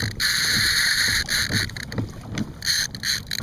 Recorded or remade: recorded